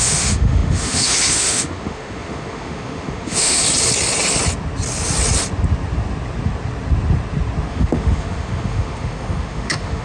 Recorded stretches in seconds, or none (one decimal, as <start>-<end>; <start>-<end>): 3.6-7.7